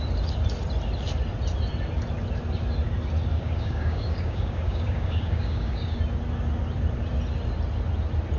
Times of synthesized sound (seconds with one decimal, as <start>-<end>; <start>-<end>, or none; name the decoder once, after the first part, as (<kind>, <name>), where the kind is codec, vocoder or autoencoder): 3.3-6.0 (codec, DAC)